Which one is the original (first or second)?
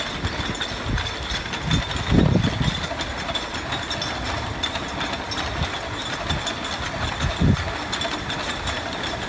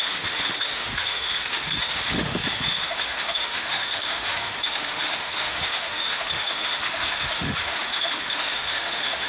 first